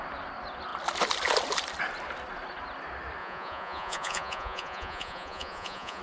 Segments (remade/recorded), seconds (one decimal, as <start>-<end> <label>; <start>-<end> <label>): 0.0-3.2 recorded; 3.2-6.0 remade

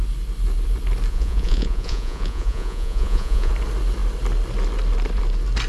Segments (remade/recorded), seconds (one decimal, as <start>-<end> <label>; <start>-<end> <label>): 0.0-1.1 recorded; 1.1-3.5 remade; 3.5-5.7 recorded

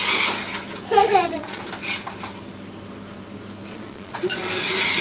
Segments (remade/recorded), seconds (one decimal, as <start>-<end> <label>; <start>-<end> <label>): 0.0-1.0 recorded; 1.0-1.6 remade; 1.6-3.7 recorded; 3.7-4.4 remade; 4.4-5.0 recorded

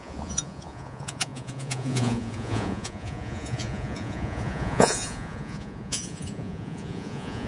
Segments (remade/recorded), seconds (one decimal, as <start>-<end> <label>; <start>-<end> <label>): 0.0-7.5 remade

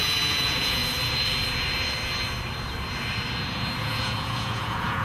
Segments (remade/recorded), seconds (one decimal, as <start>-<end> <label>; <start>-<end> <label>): 0.0-0.8 remade; 0.8-3.8 recorded; 3.8-5.0 remade

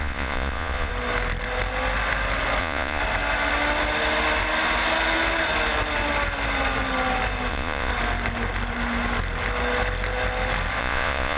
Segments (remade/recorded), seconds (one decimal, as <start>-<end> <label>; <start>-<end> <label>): 0.0-0.9 remade; 0.9-2.6 recorded; 2.6-3.0 remade; 3.0-7.5 recorded; 7.5-7.9 remade; 7.9-10.8 recorded; 10.8-11.4 remade